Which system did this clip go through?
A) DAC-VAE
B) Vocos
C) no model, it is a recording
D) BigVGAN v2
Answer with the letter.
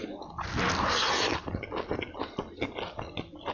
C